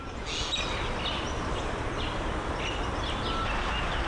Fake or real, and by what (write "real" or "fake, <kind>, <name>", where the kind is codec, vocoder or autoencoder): real